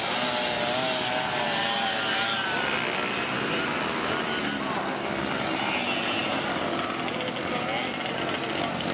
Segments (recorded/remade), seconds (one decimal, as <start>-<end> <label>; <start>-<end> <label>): 0.0-8.9 recorded